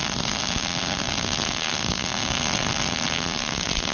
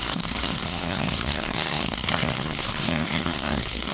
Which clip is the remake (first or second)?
second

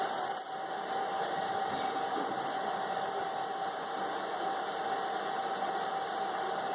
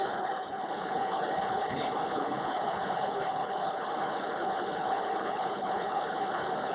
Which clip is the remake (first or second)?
second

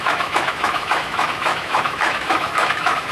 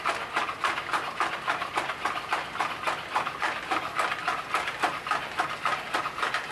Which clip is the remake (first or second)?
first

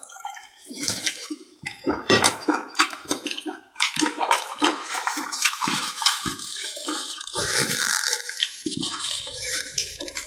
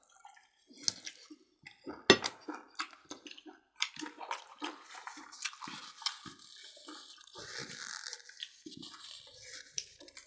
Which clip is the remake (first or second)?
first